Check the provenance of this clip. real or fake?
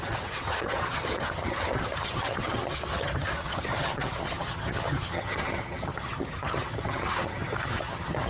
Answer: fake